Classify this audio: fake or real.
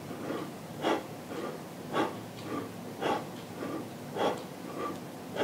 real